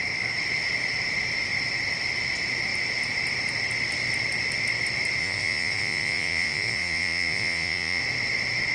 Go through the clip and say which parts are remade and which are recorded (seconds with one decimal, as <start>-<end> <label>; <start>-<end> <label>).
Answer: 0.0-5.2 recorded; 5.2-8.0 remade; 8.0-8.7 recorded